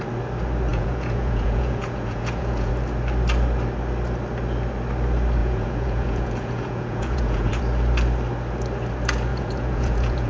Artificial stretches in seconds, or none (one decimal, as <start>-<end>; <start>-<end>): 0.7-2.7; 5.4-7.6; 9.3-10.3